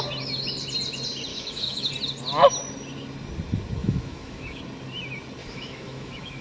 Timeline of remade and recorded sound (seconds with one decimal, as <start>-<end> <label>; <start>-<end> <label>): 0.0-1.3 recorded; 1.3-1.9 remade; 1.9-3.8 recorded; 3.8-4.6 remade; 4.6-5.4 recorded; 5.4-6.4 remade

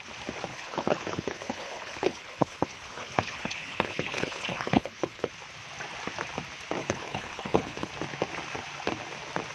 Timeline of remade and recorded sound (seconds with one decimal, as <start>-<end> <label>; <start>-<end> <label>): 0.0-0.5 recorded; 0.5-5.3 remade; 5.3-6.8 recorded; 6.8-7.9 remade; 7.9-9.5 recorded

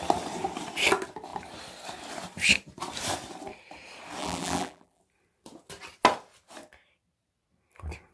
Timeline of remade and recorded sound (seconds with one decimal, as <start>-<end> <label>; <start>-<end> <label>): 0.0-4.2 recorded; 4.2-5.0 remade; 5.0-8.1 recorded

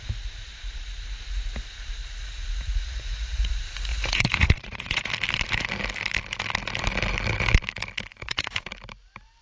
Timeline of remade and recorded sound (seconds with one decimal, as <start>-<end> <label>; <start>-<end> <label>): 0.0-2.0 recorded; 2.0-3.5 remade; 3.5-3.9 recorded; 3.9-5.1 remade; 5.1-8.1 recorded; 8.1-8.7 remade; 8.7-9.4 recorded

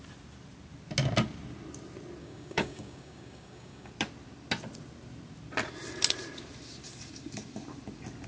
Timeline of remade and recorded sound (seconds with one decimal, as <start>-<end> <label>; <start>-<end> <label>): 0.0-2.2 recorded; 2.2-3.9 remade; 3.9-8.3 recorded

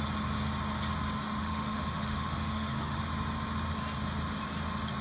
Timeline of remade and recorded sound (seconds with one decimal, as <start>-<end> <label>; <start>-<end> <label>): 0.0-1.4 recorded; 1.4-3.0 remade; 3.0-5.0 recorded

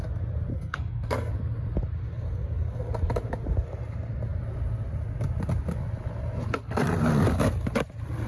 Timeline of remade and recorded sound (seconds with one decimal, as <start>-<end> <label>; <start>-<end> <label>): 0.0-0.5 recorded; 0.5-1.3 remade; 1.3-8.3 recorded